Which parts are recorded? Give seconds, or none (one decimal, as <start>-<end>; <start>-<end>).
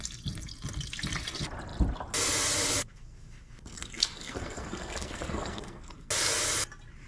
0.0-2.8; 6.1-7.1